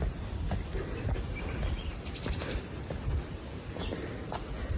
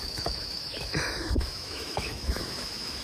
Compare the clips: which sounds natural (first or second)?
first